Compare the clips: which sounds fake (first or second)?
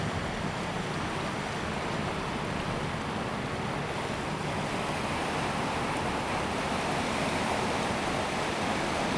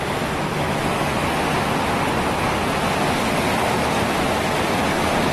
first